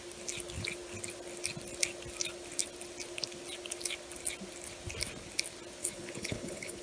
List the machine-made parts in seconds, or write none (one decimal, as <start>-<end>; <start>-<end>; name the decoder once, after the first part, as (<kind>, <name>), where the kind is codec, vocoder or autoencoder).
5.8-6.8 (codec, HILCodec)